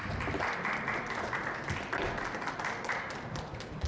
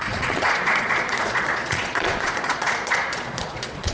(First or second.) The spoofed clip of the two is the second